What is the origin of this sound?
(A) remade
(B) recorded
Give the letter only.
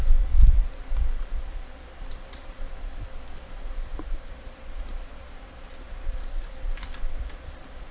A